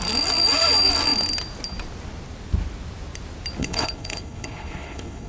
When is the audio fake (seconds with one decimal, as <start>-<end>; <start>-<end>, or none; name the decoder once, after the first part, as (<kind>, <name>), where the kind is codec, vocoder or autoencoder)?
3.6-5.3 (codec, HILCodec)